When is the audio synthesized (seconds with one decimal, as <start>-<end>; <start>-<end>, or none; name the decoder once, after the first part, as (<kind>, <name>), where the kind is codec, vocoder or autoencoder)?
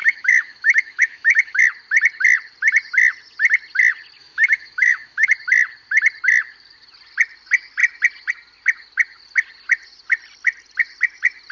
0.0-1.6 (autoencoder, DAC-VAE); 4.2-5.3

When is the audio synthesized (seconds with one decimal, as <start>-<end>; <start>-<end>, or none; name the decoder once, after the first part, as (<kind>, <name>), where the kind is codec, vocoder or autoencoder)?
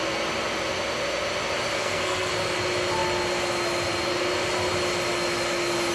1.7-2.3 (codec, SNAC)